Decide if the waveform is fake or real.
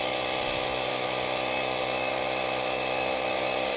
real